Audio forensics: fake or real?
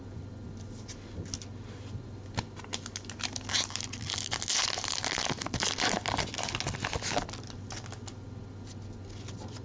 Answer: real